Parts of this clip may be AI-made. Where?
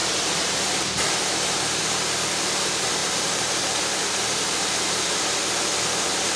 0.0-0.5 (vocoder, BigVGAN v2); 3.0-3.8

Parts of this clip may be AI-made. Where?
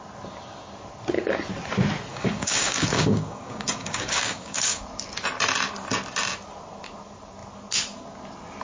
2.1-4.8 (codec, DAC)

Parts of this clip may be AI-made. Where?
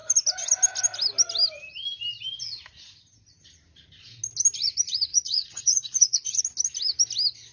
5.1-6.4 (vocoder, Vocos)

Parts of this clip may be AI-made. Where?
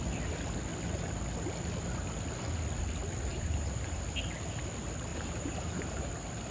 3.3-4.0 (vocoder, BigVGAN v2); 5.1-6.1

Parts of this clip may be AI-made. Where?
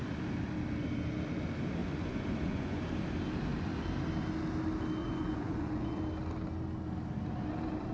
1.8-2.8 (vocoder, Vocos); 5.0-6.0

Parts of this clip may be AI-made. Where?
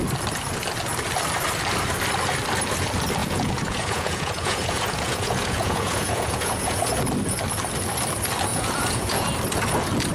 3.2-6.9 (vocoder, Vocos); 8.5-9.3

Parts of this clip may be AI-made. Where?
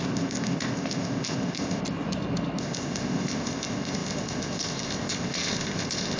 0.0-1.8 (codec, ZipCodec); 2.6-6.2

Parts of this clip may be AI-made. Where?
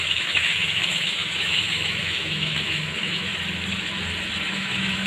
0.0-3.3 (autoencoder, DAC-VAE); 4.5-5.1